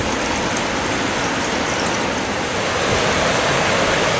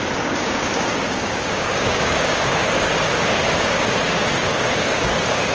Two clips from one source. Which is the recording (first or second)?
first